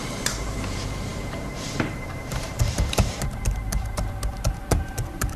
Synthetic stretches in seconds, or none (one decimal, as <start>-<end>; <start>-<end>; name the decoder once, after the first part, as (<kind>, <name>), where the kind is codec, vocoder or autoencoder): 0.0-5.4 (vocoder, BigVGAN v2)